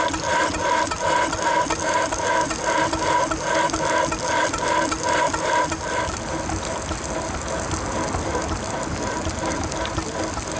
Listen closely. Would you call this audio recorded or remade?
recorded